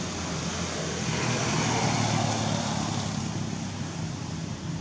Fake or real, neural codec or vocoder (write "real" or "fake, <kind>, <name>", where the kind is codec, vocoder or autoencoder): real